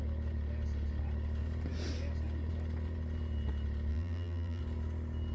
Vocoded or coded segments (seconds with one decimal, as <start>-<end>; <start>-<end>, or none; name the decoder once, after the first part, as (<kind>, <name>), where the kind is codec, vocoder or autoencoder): 3.9-4.6 (vocoder, BigVGAN v2)